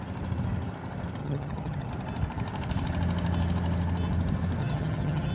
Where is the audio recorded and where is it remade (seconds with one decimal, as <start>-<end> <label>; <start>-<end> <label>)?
0.0-1.2 recorded; 1.2-1.9 remade; 1.9-4.6 recorded; 4.6-5.3 remade